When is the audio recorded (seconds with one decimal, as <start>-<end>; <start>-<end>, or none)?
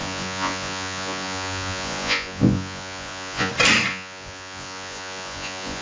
3.5-3.9